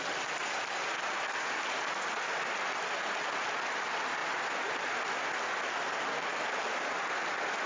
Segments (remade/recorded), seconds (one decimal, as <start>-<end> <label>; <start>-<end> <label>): 0.0-4.2 recorded; 4.2-4.9 remade; 4.9-7.7 recorded